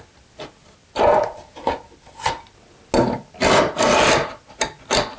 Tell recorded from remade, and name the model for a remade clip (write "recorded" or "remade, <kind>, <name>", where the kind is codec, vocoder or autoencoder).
recorded